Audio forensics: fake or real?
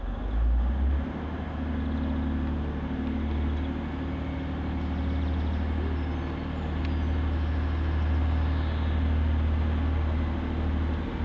real